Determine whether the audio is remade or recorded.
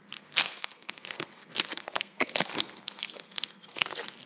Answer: remade